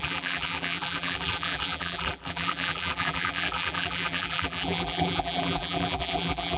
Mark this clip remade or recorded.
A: remade